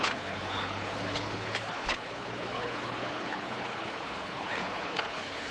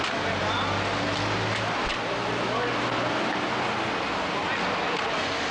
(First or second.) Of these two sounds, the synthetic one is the first